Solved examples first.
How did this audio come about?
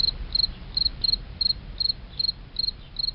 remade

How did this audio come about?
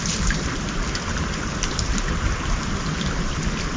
recorded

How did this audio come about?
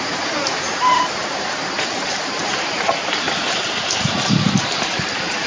remade